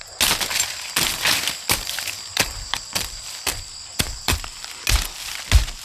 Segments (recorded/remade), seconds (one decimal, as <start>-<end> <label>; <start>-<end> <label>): 0.0-1.3 recorded; 1.3-4.8 remade; 4.8-5.8 recorded